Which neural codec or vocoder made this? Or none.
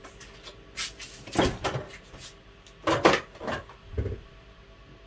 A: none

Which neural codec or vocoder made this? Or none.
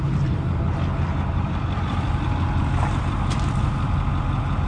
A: none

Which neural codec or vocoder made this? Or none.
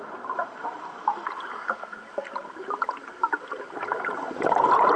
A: none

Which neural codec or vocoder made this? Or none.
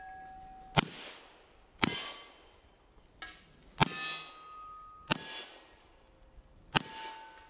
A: none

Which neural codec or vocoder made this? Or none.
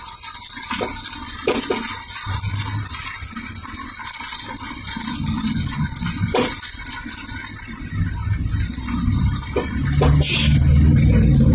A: none